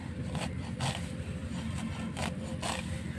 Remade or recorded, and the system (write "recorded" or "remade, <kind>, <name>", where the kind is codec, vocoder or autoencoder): recorded